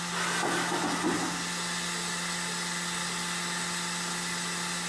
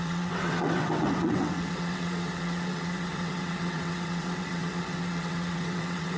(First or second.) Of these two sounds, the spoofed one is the second